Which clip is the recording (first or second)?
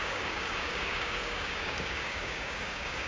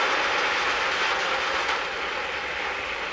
second